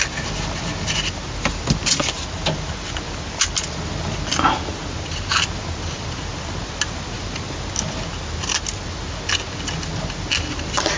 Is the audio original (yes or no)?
yes